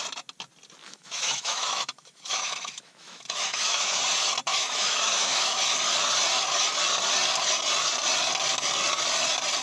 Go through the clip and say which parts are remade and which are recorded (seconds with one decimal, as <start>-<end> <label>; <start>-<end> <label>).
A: 0.0-0.8 recorded; 0.8-4.0 remade; 4.0-4.5 recorded; 4.5-5.6 remade; 5.6-9.6 recorded